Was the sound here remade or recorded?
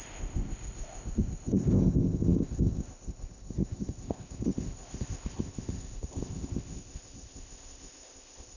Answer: remade